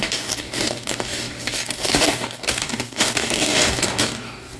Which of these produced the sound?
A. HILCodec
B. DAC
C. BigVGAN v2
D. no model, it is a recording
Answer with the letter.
B